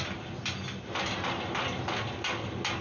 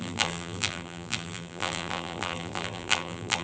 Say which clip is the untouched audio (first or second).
first